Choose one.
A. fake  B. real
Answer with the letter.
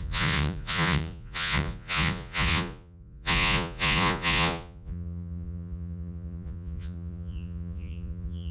A